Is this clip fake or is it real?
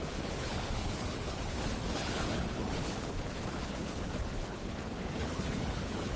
fake